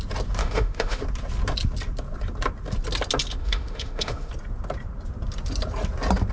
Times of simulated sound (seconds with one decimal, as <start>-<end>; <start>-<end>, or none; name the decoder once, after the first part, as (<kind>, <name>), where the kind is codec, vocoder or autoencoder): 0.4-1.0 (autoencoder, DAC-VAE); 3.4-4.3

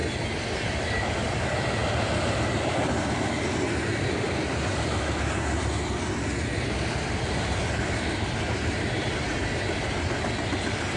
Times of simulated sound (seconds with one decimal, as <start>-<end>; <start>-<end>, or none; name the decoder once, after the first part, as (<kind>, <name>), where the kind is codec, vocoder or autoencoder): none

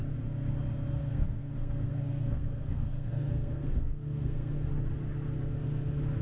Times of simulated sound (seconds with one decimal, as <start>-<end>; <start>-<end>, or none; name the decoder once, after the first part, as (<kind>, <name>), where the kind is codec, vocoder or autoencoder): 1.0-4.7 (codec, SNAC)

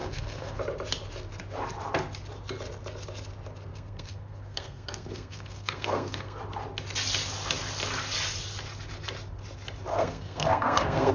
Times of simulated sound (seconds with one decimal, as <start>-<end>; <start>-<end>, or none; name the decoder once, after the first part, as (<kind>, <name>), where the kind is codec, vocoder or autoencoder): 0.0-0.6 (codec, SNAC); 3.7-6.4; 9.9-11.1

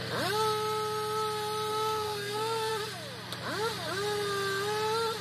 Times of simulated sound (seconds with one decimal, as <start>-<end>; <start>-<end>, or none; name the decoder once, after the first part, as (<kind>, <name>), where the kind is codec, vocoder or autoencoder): 1.7-2.7 (codec, SNAC)

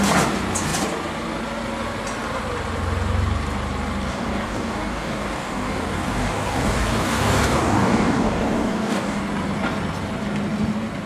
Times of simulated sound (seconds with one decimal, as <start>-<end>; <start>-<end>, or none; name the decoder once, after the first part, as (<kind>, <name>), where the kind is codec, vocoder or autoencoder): 4.1-9.2 (codec, DAC)

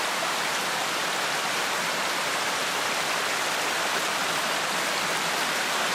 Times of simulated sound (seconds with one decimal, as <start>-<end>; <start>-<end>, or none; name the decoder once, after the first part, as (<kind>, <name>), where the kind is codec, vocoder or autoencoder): 0.0-3.2 (vocoder, BigVGAN v2); 4.2-5.9